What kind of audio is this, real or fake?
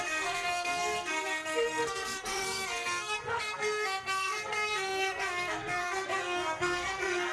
fake